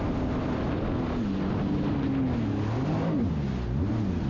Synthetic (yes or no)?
no